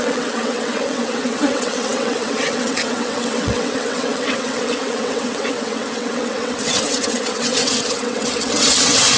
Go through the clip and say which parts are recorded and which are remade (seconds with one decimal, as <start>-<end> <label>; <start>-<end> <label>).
0.0-9.2 remade